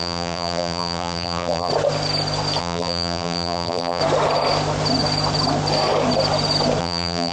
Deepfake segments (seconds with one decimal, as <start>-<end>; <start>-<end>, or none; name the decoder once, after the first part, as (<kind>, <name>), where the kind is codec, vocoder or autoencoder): 0.0-1.7 (vocoder, BigVGAN v2); 2.6-4.0; 6.8-7.3